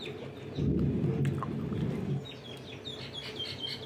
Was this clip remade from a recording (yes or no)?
no